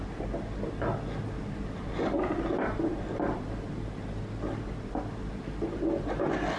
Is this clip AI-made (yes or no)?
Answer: no